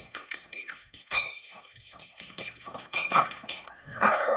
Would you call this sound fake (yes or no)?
yes